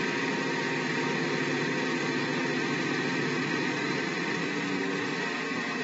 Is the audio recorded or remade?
recorded